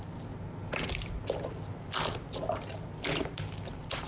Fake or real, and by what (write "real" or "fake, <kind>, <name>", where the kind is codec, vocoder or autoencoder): real